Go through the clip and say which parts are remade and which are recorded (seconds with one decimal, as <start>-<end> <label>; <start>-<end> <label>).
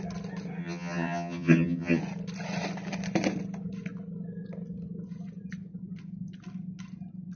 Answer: 0.0-0.6 recorded; 0.6-2.0 remade; 2.0-7.4 recorded